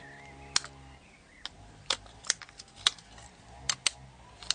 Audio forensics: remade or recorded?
recorded